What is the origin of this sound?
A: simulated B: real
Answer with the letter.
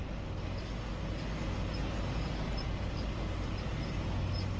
B